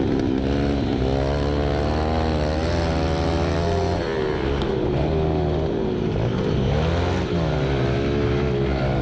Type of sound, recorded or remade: recorded